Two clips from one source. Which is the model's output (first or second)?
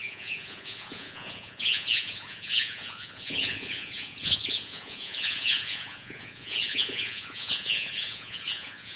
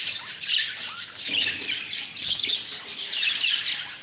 first